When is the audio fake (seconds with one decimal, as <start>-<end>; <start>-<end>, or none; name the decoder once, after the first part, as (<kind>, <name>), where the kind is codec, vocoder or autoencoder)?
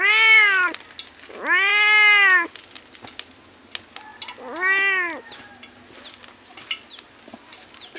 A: none